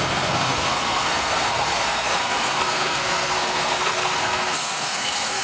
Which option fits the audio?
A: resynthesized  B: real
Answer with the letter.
A